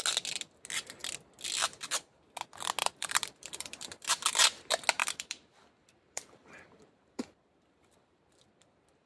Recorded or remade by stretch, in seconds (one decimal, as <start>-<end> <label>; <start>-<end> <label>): 0.0-2.8 recorded; 2.8-4.1 remade; 4.1-5.0 recorded; 5.0-8.3 remade; 8.3-9.1 recorded